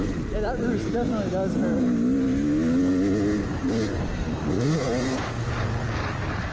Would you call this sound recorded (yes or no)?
yes